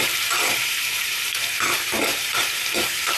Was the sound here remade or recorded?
remade